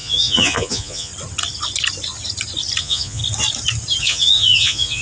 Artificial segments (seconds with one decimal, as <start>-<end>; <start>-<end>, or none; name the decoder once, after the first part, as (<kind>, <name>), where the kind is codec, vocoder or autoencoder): 0.0-1.1 (vocoder, Vocos); 2.8-3.2; 4.0-5.0